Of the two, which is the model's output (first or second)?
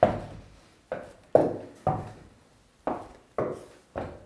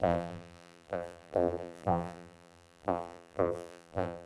second